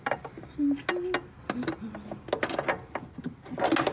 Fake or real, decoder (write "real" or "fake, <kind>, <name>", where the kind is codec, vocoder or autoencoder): real